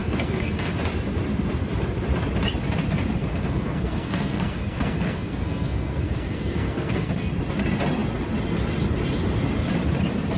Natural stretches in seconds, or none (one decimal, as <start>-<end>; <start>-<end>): 0.7-3.2; 7.3-10.4